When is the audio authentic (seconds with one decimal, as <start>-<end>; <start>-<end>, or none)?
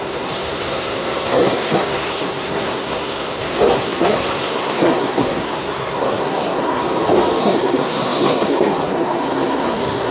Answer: 6.8-7.4